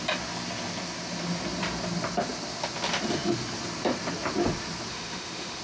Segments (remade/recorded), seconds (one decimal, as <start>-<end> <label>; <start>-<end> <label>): 0.0-4.9 recorded; 4.9-5.6 remade